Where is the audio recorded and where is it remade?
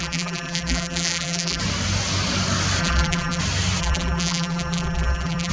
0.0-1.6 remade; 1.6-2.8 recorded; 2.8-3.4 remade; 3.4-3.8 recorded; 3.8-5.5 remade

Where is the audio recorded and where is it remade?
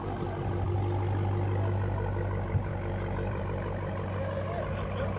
0.0-2.7 recorded; 2.7-3.4 remade; 3.4-5.2 recorded